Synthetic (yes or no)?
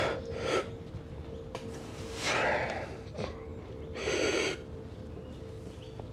no